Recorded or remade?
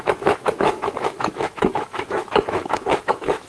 remade